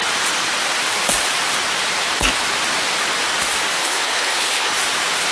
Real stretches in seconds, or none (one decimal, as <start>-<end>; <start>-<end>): 0.0-3.8; 4.7-5.3